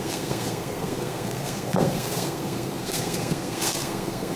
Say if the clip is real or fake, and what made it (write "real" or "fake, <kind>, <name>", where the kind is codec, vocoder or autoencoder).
fake, codec, SNAC